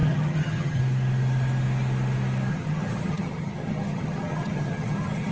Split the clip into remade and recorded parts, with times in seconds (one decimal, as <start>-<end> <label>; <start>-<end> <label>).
0.0-0.8 remade; 0.8-2.5 recorded; 2.5-5.3 remade